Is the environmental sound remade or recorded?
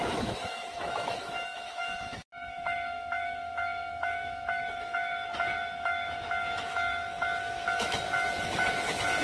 remade